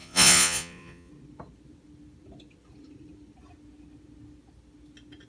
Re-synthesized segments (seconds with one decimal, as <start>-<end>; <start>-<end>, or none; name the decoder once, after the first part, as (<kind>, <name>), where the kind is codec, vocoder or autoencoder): 0.0-1.1 (vocoder, Vocos)